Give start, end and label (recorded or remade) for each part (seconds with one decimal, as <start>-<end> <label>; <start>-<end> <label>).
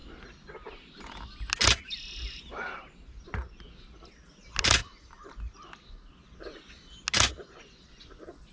0.0-8.5 recorded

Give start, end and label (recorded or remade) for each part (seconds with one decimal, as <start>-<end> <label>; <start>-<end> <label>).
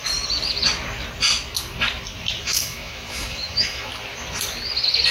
0.0-2.4 recorded; 2.4-3.9 remade; 3.9-5.1 recorded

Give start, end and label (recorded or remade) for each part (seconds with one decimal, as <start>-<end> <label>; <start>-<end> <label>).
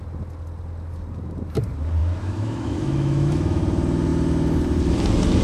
0.0-2.0 recorded; 2.0-3.6 remade; 3.6-5.4 recorded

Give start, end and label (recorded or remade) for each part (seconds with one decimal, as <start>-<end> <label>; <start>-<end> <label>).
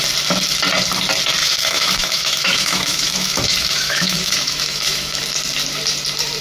0.0-1.4 recorded; 1.4-5.2 remade; 5.2-6.4 recorded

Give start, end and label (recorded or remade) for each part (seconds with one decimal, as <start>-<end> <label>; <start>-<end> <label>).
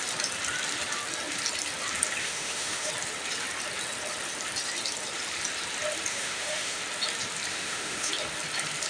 0.0-2.2 recorded; 2.2-2.9 remade; 2.9-6.1 recorded; 6.1-6.8 remade; 6.8-7.5 recorded; 7.5-8.1 remade; 8.1-8.9 recorded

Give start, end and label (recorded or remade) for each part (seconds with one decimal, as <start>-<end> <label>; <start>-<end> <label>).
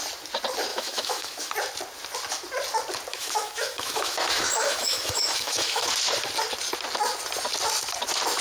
0.0-0.7 recorded; 0.7-1.5 remade; 1.5-3.1 recorded; 3.1-5.9 remade; 5.9-8.4 recorded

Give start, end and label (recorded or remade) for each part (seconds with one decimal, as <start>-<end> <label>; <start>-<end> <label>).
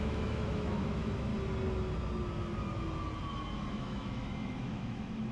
0.0-1.3 remade; 1.3-3.7 recorded; 3.7-5.3 remade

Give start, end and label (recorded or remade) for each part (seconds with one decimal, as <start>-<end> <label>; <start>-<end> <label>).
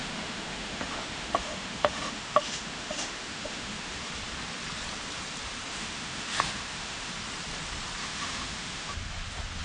0.0-4.0 remade; 4.0-5.7 recorded; 5.7-7.1 remade; 7.1-8.0 recorded; 8.0-8.9 remade; 8.9-9.6 recorded